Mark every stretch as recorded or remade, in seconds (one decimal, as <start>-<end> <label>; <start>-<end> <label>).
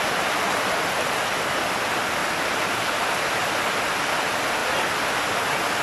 0.0-5.8 recorded